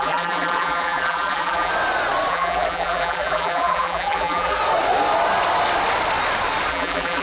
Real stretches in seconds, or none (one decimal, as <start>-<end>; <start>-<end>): 1.7-2.3; 4.6-6.7

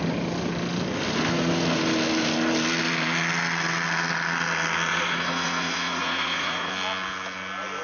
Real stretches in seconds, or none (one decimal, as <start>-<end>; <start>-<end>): 0.0-4.9; 6.7-7.8

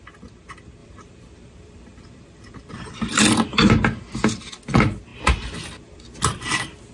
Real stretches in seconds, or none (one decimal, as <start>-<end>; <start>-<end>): 0.0-0.8; 3.7-6.9

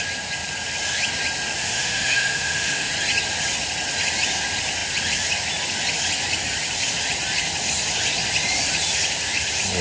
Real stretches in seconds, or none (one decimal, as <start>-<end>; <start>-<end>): 0.0-1.6; 2.9-9.8